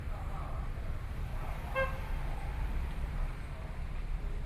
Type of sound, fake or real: fake